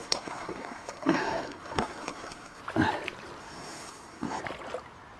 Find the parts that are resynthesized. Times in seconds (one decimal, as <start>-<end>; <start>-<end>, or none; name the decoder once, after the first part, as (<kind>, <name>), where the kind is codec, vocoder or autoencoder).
0.0-2.6 (codec, SNAC); 3.4-4.4